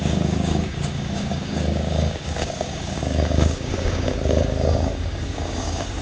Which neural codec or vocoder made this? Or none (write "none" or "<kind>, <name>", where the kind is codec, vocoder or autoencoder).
codec, DAC